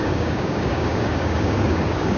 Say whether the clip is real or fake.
fake